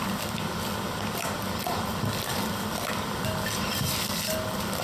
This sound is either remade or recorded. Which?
remade